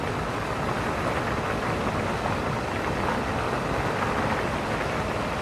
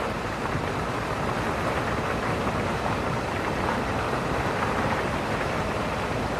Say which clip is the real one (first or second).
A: first